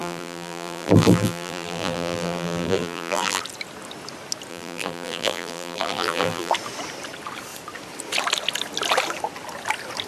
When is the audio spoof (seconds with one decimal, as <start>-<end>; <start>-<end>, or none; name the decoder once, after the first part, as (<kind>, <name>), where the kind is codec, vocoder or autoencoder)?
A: 0.0-3.4 (vocoder, BigVGAN v2); 4.5-6.5

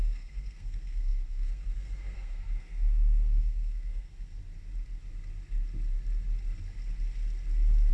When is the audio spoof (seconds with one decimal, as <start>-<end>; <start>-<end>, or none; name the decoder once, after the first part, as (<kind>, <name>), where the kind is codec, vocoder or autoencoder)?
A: 0.0-4.4 (codec, SNAC)

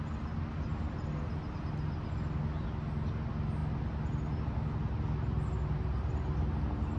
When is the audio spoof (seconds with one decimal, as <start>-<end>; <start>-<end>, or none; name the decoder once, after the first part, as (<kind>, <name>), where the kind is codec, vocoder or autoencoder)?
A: none

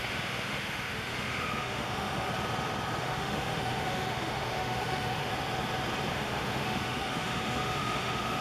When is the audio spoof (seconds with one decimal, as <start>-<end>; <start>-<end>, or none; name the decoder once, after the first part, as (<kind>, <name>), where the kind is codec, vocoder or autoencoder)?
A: 0.0-2.3 (autoencoder, DAC-VAE); 3.0-5.3; 6.1-8.4

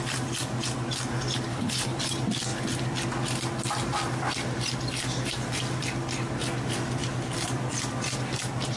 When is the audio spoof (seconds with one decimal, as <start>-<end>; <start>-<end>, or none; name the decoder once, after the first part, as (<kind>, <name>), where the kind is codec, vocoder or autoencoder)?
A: 1.5-2.0 (codec, HILCodec)